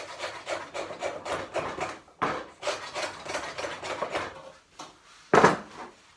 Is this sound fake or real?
real